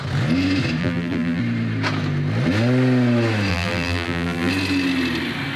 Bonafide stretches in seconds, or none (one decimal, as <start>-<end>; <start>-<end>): 0.0-0.8; 1.4-3.5; 4.5-5.6